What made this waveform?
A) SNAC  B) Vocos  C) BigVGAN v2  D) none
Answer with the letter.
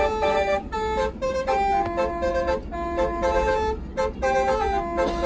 D